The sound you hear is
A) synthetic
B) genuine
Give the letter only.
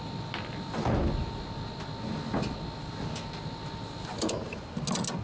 B